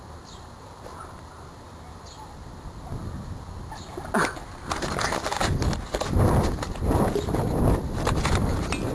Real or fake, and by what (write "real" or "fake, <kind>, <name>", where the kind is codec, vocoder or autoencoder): real